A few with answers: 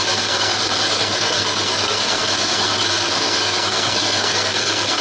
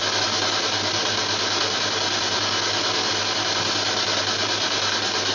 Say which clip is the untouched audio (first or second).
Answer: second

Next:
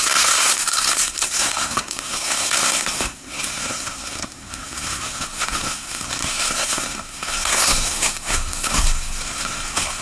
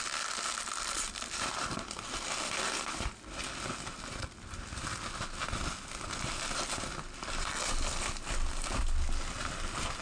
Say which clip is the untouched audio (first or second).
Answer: second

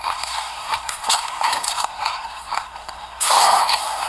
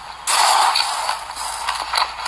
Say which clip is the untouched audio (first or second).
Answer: second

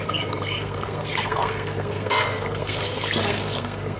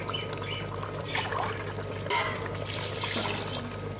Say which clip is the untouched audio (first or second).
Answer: second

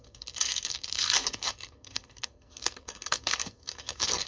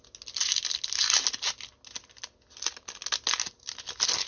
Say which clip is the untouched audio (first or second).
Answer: second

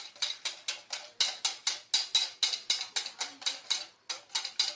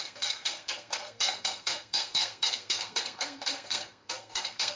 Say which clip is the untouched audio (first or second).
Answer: first